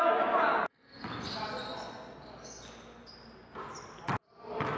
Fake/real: real